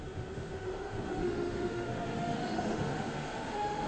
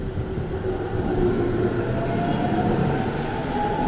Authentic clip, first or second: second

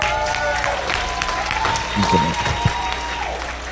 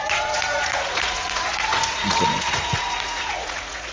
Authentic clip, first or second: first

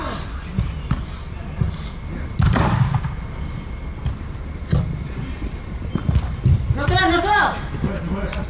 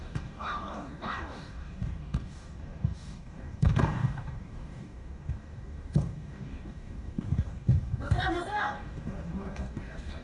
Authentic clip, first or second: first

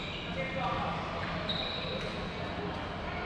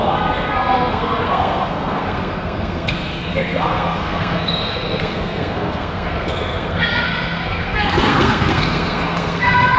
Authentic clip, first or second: first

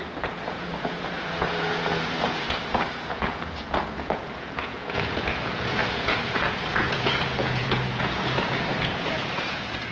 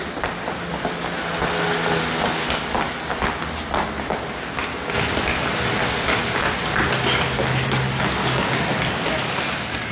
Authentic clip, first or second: second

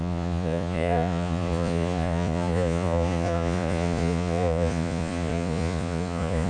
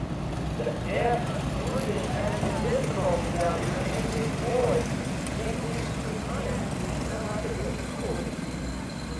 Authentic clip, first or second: second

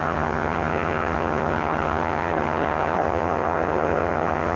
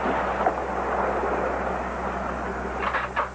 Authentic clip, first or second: second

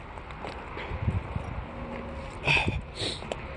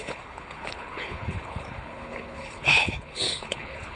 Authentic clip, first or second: first